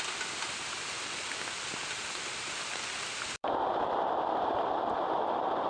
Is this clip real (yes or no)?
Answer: no